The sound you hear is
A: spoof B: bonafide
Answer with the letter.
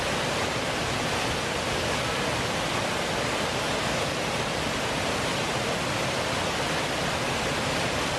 B